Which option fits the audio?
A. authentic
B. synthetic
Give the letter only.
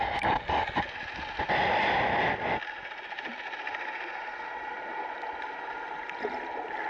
A